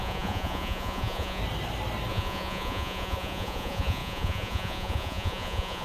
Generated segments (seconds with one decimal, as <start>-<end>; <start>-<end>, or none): 0.0-1.4; 2.1-5.8